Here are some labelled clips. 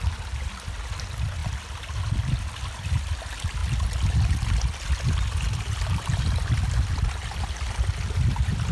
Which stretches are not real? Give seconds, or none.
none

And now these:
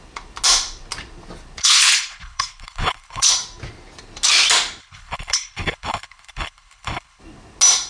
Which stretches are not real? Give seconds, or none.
1.6-3.3 (codec, HILCodec); 4.8-7.2

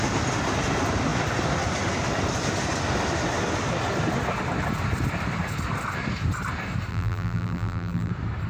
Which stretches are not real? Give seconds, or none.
6.9-8.1 (vocoder, BigVGAN v2)

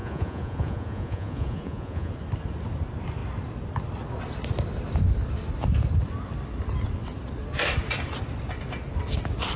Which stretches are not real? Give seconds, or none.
0.0-2.1 (vocoder, Vocos)

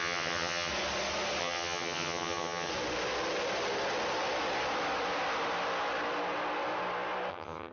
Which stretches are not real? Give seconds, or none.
0.0-0.7 (vocoder, HiFi-GAN); 1.4-2.7; 7.3-7.7

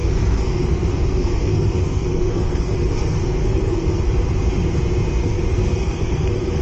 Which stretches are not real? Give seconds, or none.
0.0-4.0 (codec, SNAC); 5.2-6.6